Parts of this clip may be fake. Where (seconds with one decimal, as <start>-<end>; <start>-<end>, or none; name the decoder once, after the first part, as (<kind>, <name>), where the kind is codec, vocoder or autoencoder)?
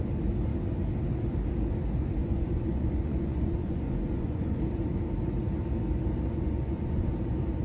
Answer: 2.2-4.6 (vocoder, Vocos); 6.3-7.1